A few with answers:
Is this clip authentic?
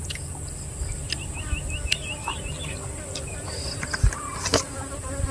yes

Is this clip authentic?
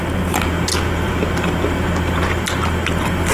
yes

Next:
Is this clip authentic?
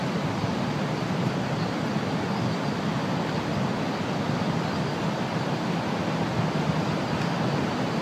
yes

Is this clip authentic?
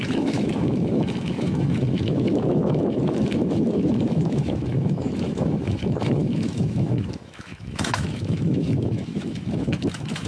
no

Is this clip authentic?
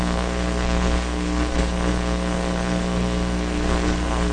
no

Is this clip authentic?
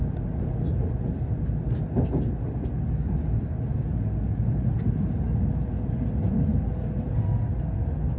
yes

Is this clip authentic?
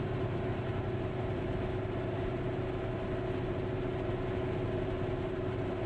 yes